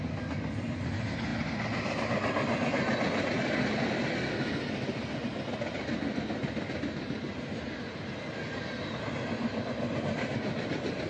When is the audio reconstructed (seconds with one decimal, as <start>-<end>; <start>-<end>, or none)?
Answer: none